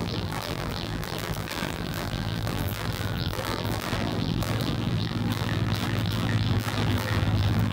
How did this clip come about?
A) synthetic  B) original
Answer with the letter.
A